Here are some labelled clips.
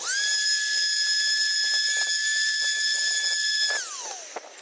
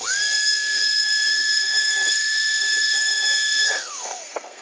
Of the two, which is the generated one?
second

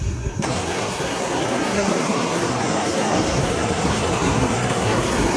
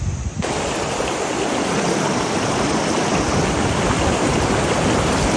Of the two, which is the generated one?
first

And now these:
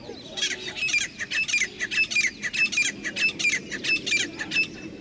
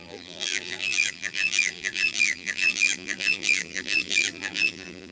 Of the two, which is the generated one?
second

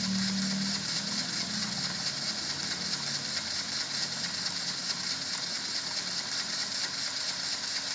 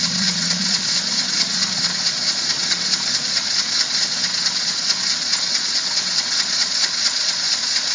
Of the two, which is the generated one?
second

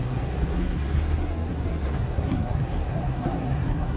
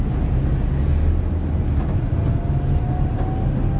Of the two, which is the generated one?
first